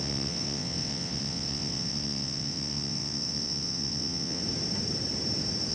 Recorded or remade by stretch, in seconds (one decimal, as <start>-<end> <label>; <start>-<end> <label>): 0.0-4.4 remade; 4.4-5.7 recorded